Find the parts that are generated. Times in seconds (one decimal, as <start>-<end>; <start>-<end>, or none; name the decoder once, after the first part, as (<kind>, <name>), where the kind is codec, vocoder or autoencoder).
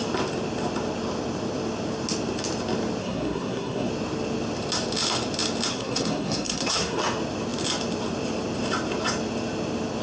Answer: 3.0-3.9 (codec, SNAC); 5.7-7.0